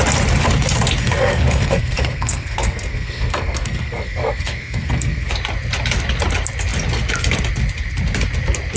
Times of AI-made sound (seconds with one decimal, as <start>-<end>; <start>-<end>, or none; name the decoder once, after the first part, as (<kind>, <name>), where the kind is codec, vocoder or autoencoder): 1.0-5.3 (codec, SNAC)